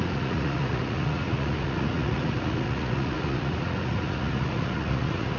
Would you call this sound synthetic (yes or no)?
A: yes